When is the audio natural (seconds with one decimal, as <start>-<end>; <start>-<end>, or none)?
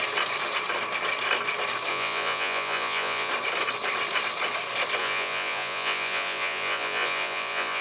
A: 0.0-1.9; 3.3-5.0